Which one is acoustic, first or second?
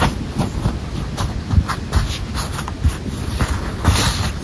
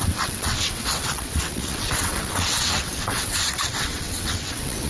first